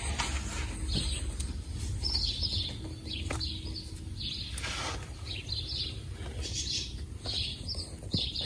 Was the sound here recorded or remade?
recorded